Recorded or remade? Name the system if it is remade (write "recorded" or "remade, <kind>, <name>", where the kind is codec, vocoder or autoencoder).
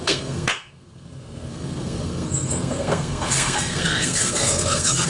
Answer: remade, codec, SNAC